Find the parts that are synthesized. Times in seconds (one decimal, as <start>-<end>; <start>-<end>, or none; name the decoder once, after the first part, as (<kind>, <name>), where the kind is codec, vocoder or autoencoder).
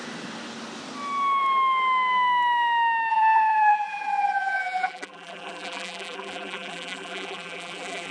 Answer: 3.1-8.1 (vocoder, BigVGAN v2)